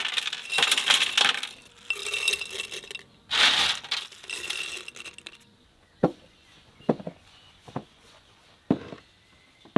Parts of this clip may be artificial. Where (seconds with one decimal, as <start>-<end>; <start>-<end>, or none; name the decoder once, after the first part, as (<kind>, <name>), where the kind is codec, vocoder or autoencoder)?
5.6-8.4 (vocoder, Vocos)